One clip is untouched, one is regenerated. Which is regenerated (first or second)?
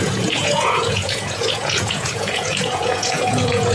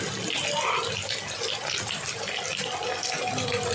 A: first